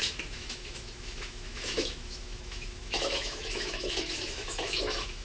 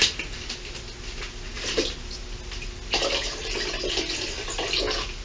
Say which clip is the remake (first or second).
first